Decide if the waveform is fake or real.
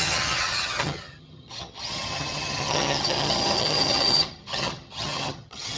fake